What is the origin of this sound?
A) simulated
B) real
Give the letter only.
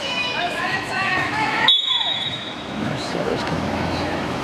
A